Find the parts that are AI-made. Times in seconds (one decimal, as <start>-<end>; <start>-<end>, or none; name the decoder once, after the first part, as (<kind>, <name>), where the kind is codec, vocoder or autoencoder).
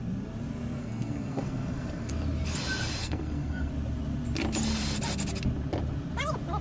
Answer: 0.8-2.1 (codec, SNAC); 3.0-3.7